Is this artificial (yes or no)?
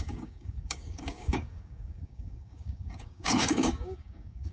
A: yes